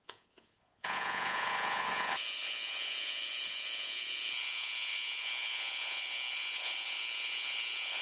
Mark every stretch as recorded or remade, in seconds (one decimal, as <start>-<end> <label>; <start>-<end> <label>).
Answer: 0.0-8.0 remade